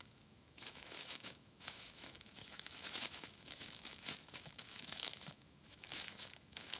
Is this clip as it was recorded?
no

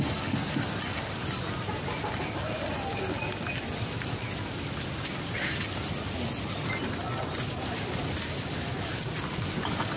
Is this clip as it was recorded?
yes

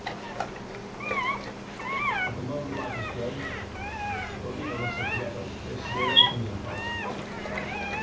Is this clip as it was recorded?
yes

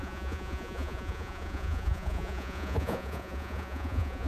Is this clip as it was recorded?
no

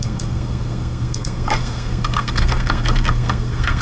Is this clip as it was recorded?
no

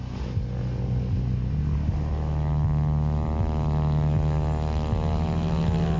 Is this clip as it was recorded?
yes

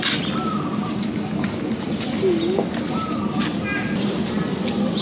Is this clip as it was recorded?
yes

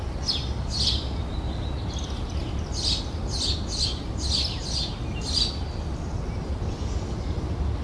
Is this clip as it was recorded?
yes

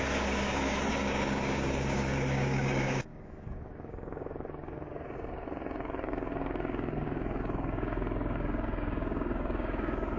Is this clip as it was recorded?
no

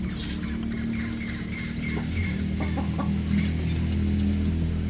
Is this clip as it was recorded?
yes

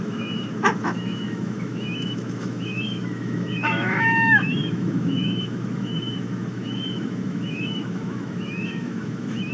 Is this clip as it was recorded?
no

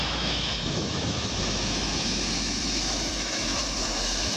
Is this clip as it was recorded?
no